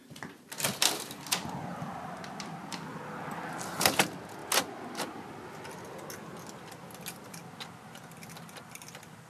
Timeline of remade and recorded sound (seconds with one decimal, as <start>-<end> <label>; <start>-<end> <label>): 0.0-9.3 recorded